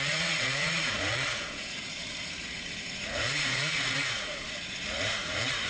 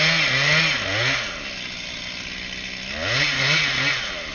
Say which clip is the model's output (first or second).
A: first